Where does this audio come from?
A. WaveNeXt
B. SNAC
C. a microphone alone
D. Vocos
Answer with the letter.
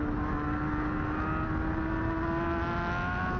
C